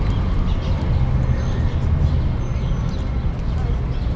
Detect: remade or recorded recorded